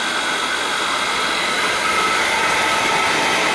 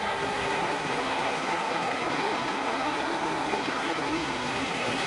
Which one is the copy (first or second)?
second